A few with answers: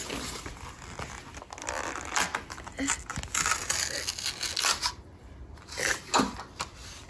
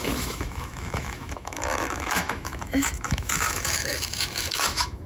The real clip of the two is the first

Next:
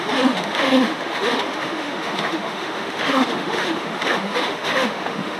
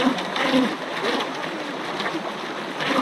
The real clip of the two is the second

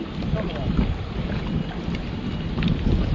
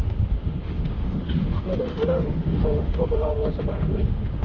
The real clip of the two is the first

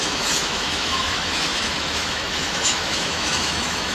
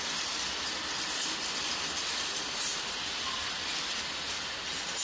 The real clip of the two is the second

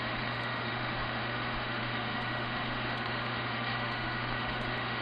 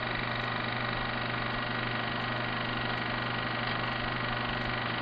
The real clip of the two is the second